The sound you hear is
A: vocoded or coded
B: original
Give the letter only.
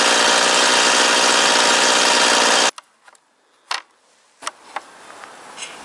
B